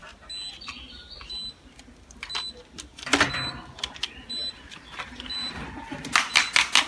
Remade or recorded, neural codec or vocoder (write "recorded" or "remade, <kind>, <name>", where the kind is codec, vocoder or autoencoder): recorded